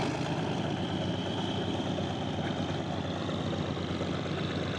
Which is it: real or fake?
real